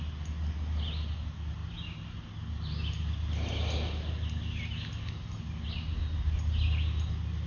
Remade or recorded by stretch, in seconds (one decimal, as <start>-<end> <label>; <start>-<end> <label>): 0.0-7.5 recorded